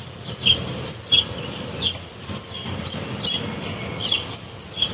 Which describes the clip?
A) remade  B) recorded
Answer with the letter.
B